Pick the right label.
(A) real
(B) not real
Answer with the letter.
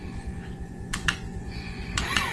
B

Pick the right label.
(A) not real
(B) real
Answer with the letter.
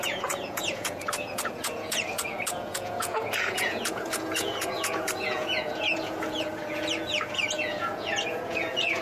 A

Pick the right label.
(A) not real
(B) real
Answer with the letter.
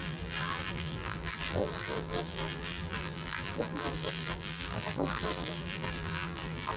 A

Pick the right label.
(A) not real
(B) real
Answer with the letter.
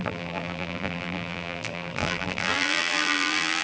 A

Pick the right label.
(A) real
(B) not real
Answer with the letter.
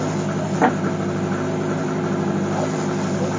A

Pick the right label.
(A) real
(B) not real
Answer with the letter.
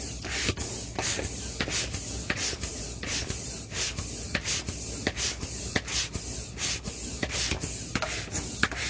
A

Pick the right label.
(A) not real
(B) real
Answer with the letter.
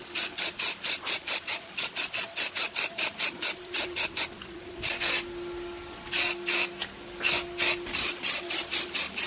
A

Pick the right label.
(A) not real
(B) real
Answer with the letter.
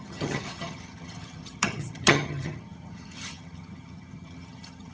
A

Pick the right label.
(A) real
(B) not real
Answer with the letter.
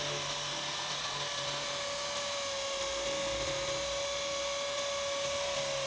A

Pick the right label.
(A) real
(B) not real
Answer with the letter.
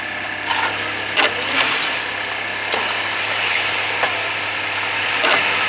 A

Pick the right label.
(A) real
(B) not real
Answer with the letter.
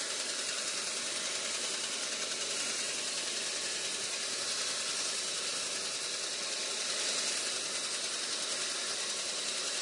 A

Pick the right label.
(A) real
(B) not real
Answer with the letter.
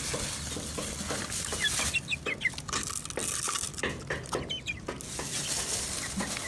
A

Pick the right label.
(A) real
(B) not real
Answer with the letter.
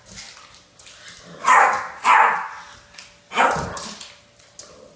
A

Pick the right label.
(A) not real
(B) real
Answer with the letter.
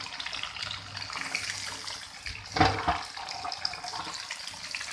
B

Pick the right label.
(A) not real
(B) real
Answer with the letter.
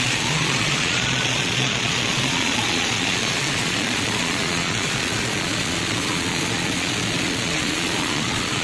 A